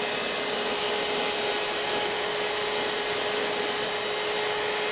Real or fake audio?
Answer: real